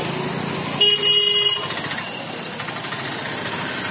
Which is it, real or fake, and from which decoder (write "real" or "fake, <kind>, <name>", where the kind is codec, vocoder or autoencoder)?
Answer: real